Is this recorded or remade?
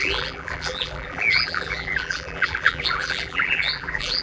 remade